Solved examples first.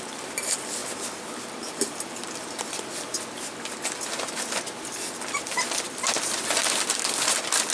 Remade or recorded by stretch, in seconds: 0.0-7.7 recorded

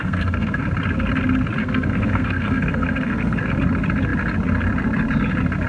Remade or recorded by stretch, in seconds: 0.0-0.6 remade; 0.6-1.6 recorded; 1.6-3.4 remade; 3.4-5.7 recorded